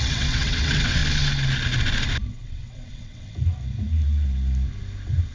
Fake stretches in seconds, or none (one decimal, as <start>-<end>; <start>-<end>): 0.0-1.0; 2.3-3.3